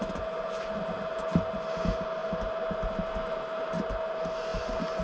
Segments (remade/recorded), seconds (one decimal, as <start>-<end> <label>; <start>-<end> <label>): 0.0-5.0 recorded